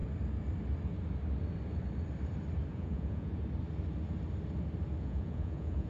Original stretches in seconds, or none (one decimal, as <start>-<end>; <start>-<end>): 0.0-2.7; 3.3-5.0